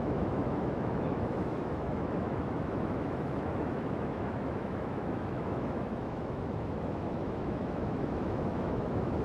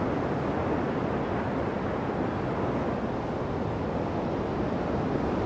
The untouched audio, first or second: second